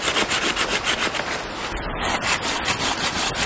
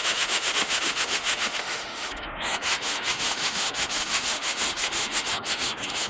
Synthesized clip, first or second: second